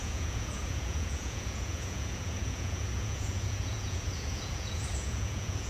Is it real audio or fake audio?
fake